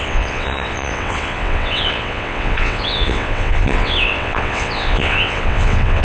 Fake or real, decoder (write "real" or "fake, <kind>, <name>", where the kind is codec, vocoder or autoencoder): fake, vocoder, WaveNeXt